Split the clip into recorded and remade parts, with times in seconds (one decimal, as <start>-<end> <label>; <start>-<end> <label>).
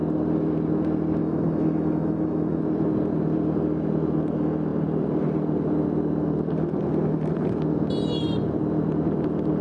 0.0-1.2 recorded; 1.2-2.6 remade; 2.6-9.6 recorded